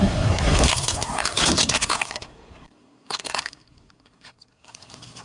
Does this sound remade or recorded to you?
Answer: remade